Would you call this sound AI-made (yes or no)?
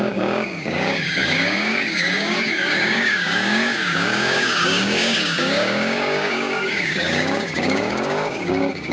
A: yes